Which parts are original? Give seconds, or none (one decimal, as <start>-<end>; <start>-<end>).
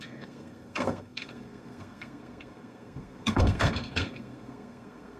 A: none